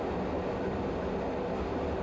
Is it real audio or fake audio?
real